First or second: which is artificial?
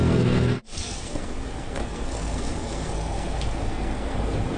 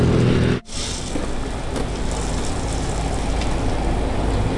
first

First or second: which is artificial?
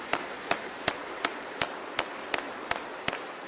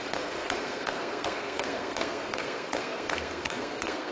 second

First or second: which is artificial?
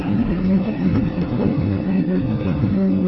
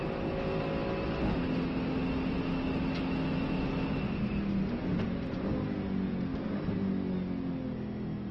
first